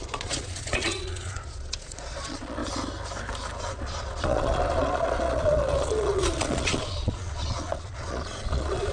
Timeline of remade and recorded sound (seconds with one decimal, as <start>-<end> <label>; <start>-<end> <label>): 0.0-2.6 remade; 2.6-3.6 recorded; 3.6-8.9 remade